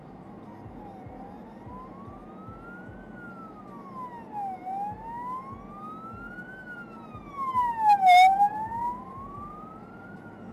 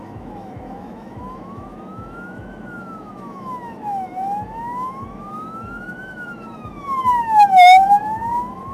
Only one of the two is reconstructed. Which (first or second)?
second